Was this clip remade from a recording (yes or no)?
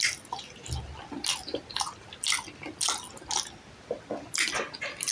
no